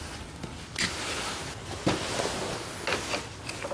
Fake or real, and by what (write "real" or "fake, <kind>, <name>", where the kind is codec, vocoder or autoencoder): real